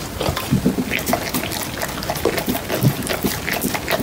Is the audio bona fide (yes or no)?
yes